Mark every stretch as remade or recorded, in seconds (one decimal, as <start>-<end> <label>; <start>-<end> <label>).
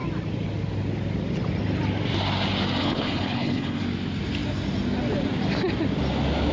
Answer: 0.0-2.8 recorded; 2.8-3.8 remade; 3.8-6.5 recorded